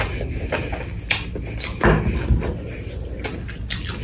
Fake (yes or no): no